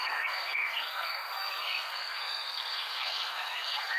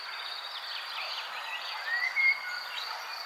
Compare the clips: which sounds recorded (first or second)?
second